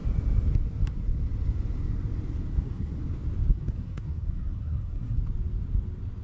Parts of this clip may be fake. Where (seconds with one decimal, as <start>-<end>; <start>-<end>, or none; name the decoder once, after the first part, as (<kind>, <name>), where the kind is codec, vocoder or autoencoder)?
2.5-3.0 (codec, SNAC); 3.5-5.2